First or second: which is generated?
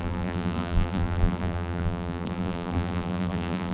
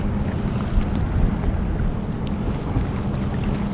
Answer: first